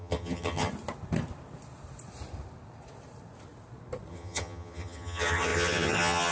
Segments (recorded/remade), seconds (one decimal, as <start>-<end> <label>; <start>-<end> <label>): 0.0-0.7 remade; 0.7-4.1 recorded; 4.1-6.3 remade